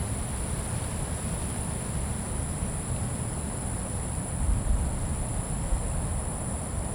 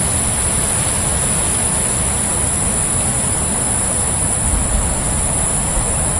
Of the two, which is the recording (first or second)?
second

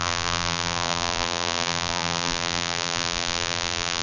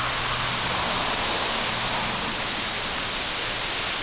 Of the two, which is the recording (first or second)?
second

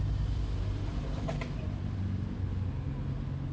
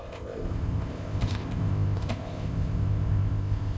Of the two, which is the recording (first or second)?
first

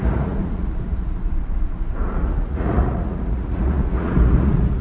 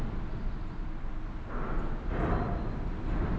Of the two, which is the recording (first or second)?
second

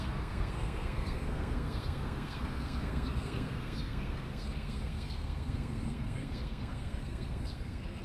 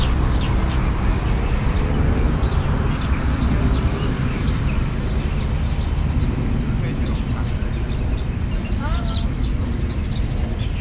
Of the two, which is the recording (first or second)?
second